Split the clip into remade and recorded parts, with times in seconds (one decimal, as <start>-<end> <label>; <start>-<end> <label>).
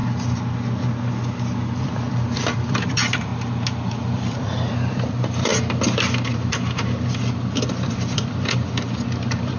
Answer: 0.0-1.8 recorded; 1.8-3.3 remade; 3.3-3.9 recorded; 3.9-5.5 remade; 5.5-6.3 recorded; 6.3-9.6 remade